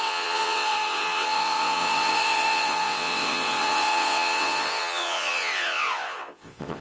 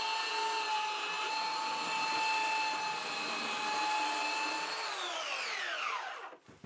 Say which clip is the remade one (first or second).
first